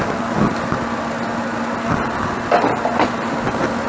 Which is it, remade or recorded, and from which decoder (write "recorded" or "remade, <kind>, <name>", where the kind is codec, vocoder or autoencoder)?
recorded